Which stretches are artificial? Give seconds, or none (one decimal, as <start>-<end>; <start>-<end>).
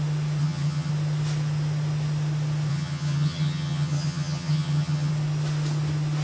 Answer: 0.4-0.9; 2.7-5.1